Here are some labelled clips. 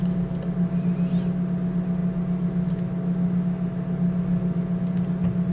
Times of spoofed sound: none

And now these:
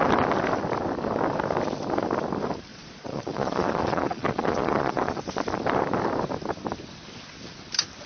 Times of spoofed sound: 2.7-5.2 (vocoder, Vocos)

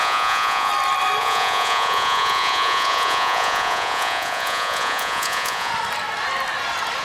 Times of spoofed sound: 0.0-0.7 (vocoder, Vocos); 1.2-5.7

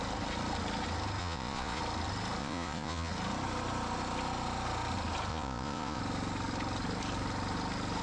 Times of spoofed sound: 1.2-1.8 (vocoder, Vocos); 2.4-3.1; 5.3-6.0

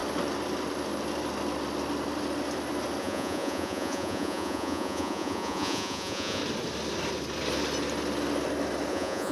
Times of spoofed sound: 3.0-6.4 (vocoder, Vocos); 8.9-9.3